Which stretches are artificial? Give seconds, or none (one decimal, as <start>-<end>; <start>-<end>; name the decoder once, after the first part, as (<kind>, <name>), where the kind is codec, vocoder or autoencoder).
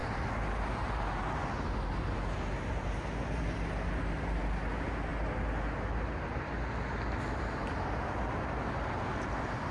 none